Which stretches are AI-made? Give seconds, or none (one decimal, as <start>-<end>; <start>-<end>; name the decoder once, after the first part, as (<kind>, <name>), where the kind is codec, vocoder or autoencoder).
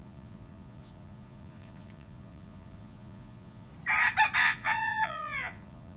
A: 0.0-3.7 (vocoder, Vocos); 4.4-6.0